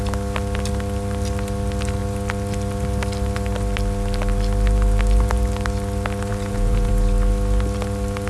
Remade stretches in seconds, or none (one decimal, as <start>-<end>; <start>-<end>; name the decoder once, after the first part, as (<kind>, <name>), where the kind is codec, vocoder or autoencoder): 6.3-6.9 (vocoder, Vocos)